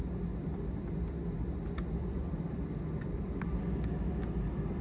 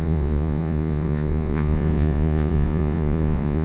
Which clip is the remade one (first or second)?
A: second